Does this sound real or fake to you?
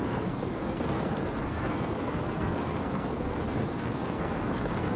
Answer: fake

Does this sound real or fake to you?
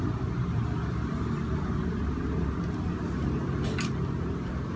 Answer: real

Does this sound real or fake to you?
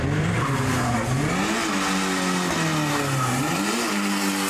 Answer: real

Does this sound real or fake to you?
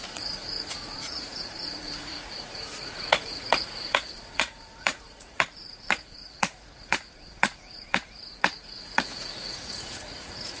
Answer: fake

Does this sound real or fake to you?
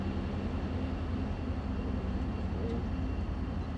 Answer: real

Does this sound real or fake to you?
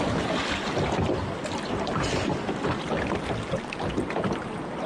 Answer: real